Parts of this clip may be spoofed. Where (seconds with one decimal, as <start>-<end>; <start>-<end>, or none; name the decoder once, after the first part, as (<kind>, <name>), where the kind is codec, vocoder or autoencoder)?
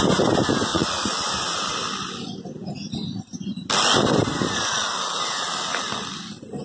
0.7-1.3 (vocoder, Vocos)